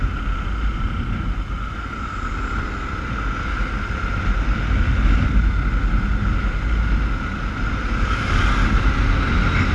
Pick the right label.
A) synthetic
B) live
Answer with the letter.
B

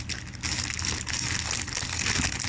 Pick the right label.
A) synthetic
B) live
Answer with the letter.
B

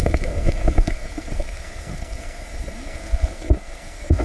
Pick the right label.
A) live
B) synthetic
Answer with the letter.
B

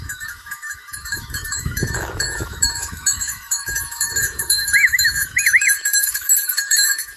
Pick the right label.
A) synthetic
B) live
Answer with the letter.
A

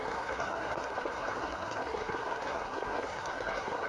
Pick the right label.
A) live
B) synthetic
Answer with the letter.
B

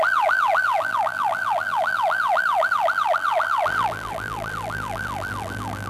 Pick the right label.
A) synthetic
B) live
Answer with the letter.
A